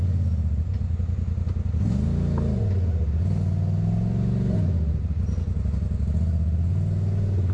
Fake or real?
real